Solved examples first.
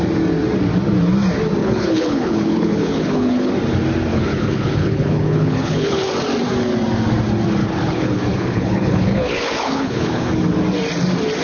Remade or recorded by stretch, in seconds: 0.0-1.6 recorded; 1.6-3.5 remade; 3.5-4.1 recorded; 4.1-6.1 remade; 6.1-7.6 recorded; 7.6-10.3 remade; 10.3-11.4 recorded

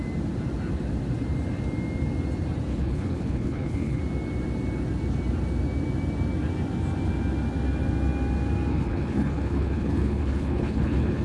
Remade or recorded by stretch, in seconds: 0.0-2.7 recorded; 2.7-4.0 remade; 4.0-8.7 recorded; 8.7-11.2 remade

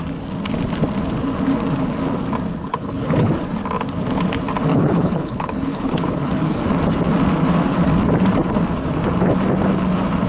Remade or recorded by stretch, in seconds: 0.0-2.7 recorded; 2.7-3.3 remade; 3.3-4.7 recorded; 4.7-6.6 remade; 6.6-10.3 recorded

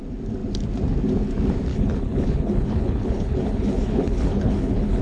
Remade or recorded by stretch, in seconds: 0.0-1.7 recorded; 1.7-5.0 remade

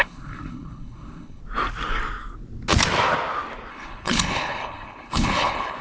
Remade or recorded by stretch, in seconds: 0.0-1.4 remade; 1.4-3.7 recorded; 3.7-5.8 remade

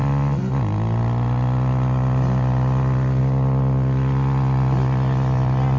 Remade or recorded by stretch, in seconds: 0.0-5.8 recorded

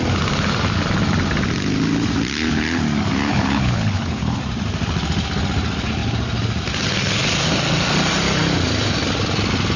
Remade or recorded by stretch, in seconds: 0.0-3.3 recorded; 3.3-4.4 remade; 4.4-9.8 recorded

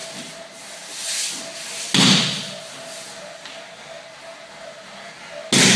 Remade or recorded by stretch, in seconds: 0.0-5.8 recorded